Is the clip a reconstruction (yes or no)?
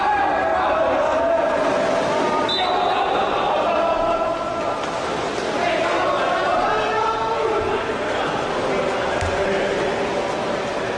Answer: yes